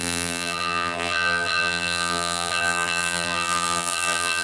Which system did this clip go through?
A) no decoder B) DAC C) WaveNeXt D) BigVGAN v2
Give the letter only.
D